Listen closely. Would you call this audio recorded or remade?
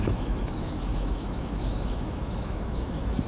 remade